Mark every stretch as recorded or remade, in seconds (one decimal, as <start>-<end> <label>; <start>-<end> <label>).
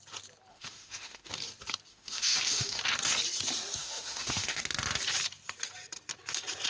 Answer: 0.0-0.5 recorded; 0.5-1.3 remade; 1.3-1.9 recorded; 1.9-2.8 remade; 2.8-3.8 recorded; 3.8-4.6 remade; 4.6-6.7 recorded